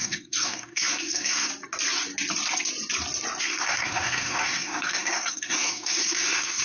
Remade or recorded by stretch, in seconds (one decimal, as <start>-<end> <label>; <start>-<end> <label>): 0.0-1.5 remade; 1.5-3.4 recorded; 3.4-6.6 remade